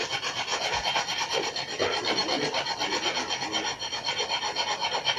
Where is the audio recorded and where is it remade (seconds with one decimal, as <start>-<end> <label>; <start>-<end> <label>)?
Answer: 0.0-5.2 recorded